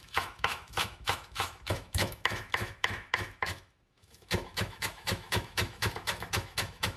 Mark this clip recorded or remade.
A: remade